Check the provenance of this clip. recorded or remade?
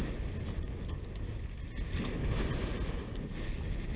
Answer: recorded